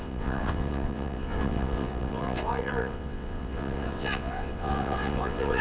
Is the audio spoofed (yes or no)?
yes